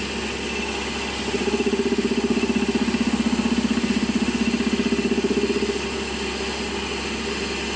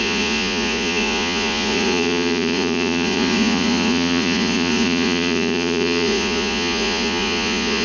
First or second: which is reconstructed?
second